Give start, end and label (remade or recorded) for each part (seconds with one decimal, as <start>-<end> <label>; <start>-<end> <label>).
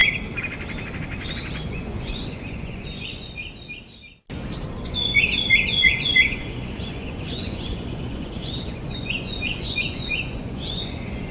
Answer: 0.0-1.5 recorded; 1.5-3.4 remade; 3.4-4.8 recorded; 4.8-11.3 remade